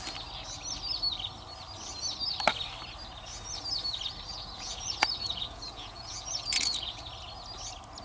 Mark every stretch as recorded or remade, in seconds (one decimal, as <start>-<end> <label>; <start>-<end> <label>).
0.0-4.3 recorded; 4.3-7.1 remade; 7.1-8.0 recorded